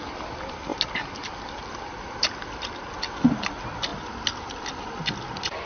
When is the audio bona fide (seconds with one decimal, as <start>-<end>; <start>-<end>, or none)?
0.0-5.7